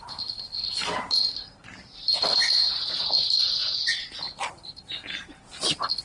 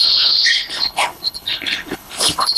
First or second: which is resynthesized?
second